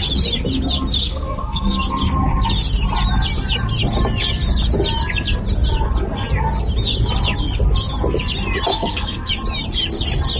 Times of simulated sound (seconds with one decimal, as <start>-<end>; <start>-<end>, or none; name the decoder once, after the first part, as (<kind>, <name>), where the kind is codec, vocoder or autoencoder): 1.0-1.8 (codec, SNAC); 8.7-9.3